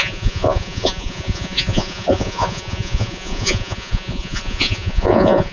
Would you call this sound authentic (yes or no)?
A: no